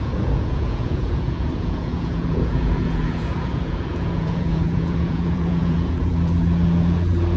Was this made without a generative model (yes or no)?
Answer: no